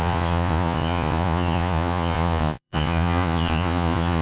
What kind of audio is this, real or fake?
fake